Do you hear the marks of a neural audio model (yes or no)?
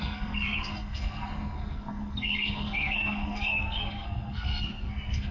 yes